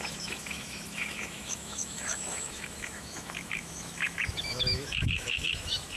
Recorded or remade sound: remade